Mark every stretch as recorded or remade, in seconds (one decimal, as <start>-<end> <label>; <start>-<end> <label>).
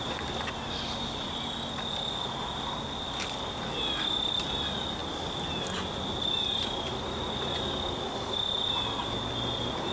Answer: 0.0-9.9 recorded